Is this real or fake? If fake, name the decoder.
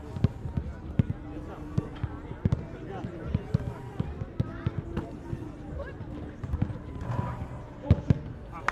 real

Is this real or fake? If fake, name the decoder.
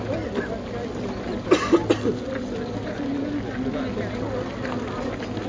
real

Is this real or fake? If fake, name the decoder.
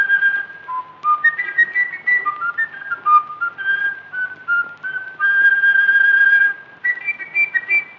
real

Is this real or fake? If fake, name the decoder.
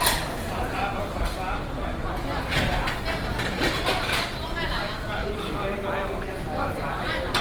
real